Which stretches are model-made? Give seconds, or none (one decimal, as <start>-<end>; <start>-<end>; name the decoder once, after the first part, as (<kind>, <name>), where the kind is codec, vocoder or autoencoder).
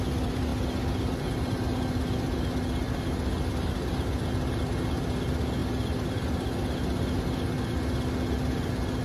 none